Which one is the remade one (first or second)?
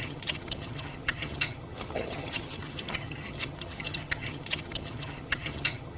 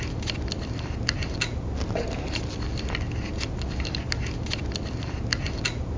first